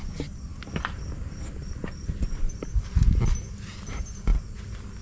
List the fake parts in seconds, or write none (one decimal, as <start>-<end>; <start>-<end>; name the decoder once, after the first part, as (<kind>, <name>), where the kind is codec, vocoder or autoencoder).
none